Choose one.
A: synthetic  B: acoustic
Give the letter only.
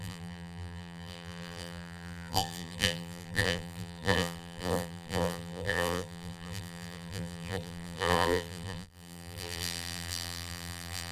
A